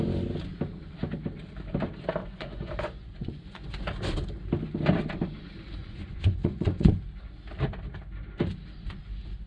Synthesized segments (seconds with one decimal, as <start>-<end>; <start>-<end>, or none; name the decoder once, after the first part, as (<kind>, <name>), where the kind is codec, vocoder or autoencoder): 2.2-3.7 (vocoder, Vocos); 5.8-6.9